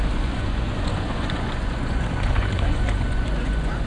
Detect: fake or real fake